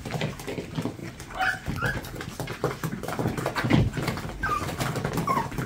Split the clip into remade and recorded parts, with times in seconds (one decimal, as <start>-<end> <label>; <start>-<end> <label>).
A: 0.0-5.7 recorded